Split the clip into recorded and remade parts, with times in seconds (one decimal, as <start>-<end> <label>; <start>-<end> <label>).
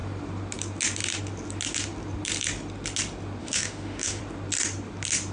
0.0-3.4 recorded; 3.4-4.2 remade; 4.2-5.3 recorded